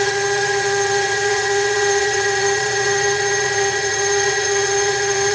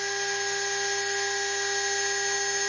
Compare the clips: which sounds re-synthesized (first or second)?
first